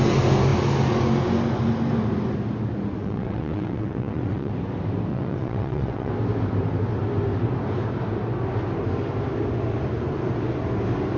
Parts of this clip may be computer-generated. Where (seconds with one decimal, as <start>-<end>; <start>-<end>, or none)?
3.0-4.5; 5.1-6.1